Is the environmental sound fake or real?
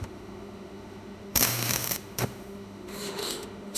fake